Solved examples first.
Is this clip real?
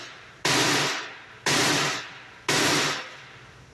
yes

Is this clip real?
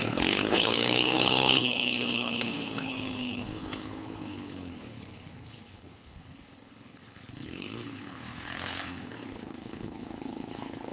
no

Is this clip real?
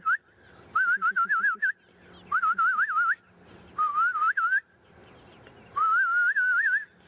yes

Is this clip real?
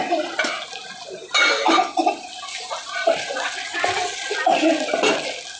yes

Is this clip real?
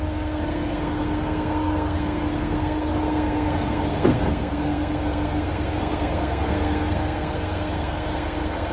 no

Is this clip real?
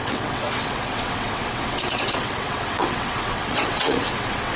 no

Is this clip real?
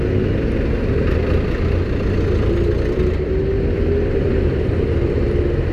yes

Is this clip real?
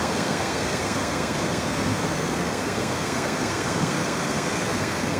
no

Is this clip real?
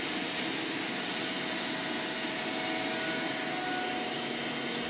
yes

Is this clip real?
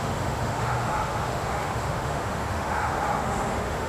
no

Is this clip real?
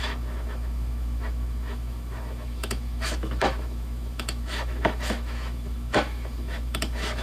no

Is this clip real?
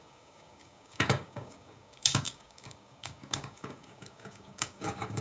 no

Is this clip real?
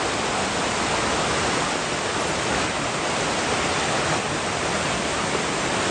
yes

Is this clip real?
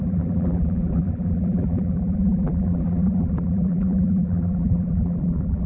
no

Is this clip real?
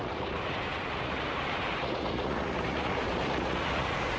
no